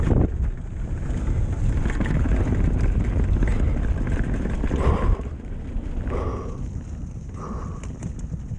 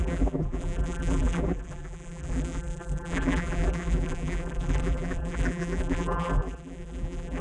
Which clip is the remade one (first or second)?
second